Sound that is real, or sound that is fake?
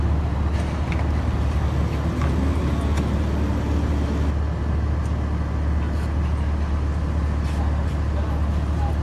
real